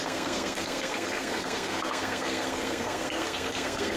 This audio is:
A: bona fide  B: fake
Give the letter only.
B